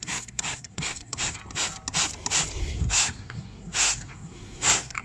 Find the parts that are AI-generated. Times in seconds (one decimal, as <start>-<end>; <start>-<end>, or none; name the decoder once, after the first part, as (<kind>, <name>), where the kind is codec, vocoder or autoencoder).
0.0-1.4 (codec, SNAC); 2.6-5.0